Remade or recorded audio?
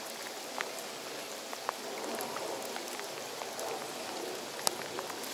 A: recorded